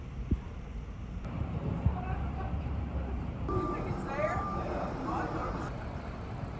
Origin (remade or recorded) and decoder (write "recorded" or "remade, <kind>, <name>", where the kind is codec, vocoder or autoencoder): remade, vocoder, BigVGAN v2